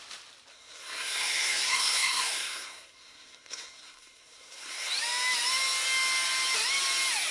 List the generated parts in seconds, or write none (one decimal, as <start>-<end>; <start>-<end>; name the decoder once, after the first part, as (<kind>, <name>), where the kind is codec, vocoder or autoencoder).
0.5-4.9 (codec, SNAC)